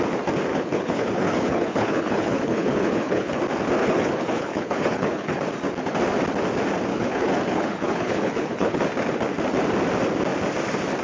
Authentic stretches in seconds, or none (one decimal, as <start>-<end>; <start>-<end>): 0.0-0.5; 3.4-3.8; 5.4-6.9; 8.8-11.0